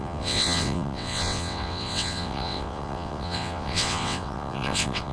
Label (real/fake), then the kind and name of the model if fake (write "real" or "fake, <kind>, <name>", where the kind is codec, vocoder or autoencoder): fake, vocoder, WaveNeXt